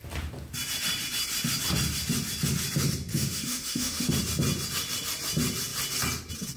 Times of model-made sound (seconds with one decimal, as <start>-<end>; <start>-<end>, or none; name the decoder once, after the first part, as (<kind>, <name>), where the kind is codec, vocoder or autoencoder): 3.1-4.2 (autoencoder, DAC-VAE)